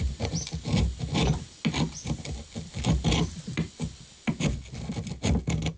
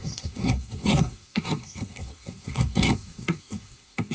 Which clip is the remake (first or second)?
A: second